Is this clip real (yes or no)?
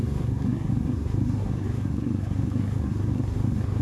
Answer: no